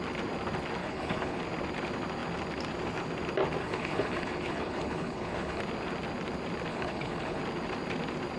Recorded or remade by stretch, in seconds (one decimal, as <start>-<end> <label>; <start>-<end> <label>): 0.0-0.8 recorded; 0.8-1.4 remade; 1.4-3.6 recorded; 3.6-5.6 remade; 5.6-6.7 recorded; 6.7-7.4 remade; 7.4-8.4 recorded